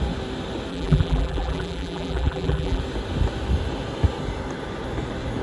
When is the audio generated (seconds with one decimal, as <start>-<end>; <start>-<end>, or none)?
0.7-2.8